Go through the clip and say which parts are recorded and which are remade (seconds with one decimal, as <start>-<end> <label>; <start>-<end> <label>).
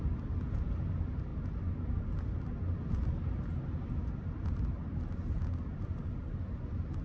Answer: 0.0-4.8 recorded; 4.8-7.0 remade